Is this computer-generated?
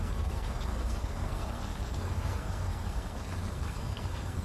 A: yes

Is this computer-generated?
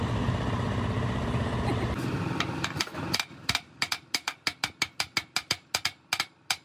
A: no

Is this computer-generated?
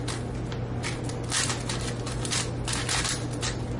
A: no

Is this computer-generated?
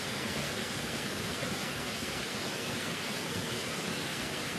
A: yes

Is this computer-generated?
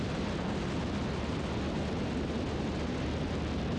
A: no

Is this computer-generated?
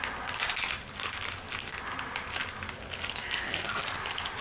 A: no